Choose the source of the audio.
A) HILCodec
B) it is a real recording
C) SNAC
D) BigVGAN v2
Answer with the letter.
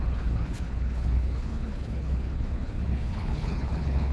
A